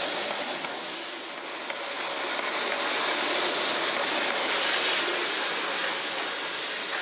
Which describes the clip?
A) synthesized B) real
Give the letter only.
B